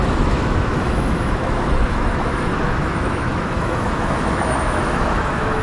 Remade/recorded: remade